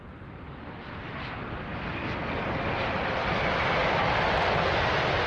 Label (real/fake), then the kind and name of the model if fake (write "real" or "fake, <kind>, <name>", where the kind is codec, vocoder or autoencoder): real